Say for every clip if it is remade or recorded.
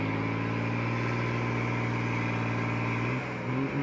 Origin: recorded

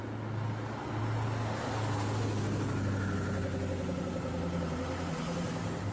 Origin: recorded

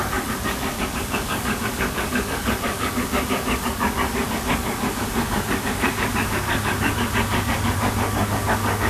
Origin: remade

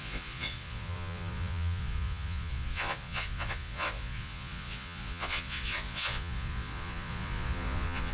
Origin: remade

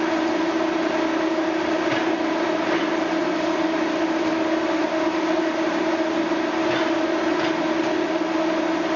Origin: recorded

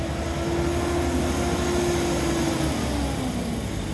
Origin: recorded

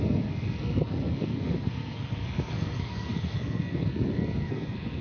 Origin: remade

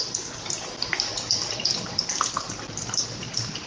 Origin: recorded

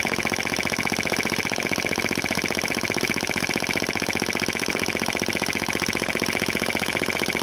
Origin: remade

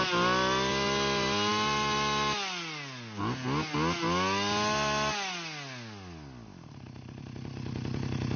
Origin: recorded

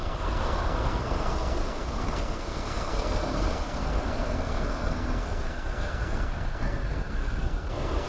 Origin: remade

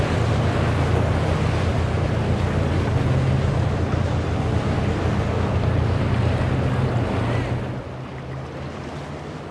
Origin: recorded